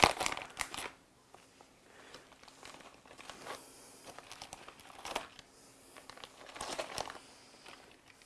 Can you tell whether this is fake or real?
real